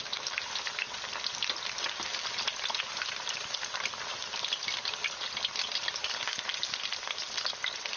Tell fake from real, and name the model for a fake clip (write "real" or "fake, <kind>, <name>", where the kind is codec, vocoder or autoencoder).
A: real